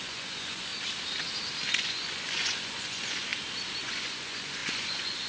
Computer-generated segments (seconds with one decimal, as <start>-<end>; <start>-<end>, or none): 0.0-0.7; 1.7-3.3; 3.8-5.3